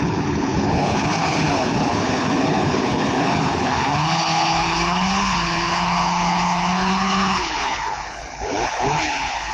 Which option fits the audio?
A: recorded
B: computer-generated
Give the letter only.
B